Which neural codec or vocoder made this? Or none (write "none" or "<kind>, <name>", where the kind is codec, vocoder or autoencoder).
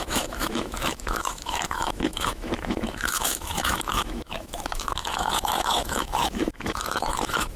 autoencoder, DAC-VAE